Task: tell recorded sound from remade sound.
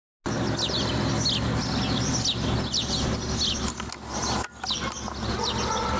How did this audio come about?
recorded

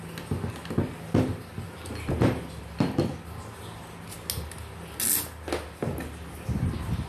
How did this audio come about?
recorded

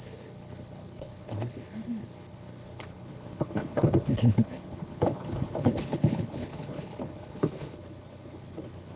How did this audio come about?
remade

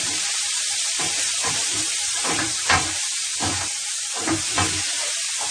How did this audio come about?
remade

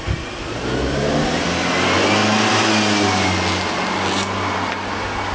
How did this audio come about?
recorded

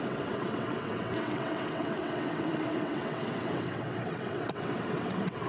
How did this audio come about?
remade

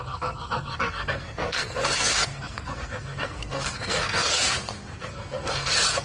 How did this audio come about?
remade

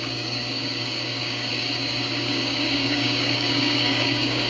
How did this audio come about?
remade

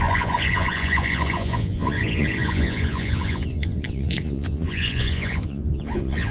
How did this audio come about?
remade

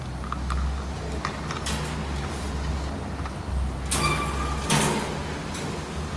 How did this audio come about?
recorded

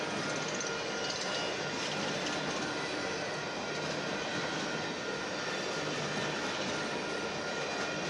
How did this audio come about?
recorded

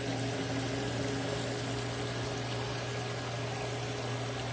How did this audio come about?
recorded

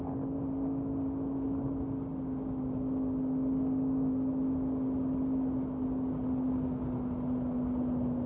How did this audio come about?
recorded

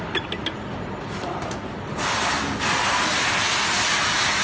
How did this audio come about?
recorded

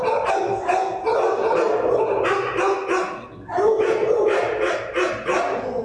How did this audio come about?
recorded